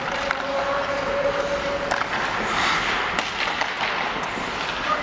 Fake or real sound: real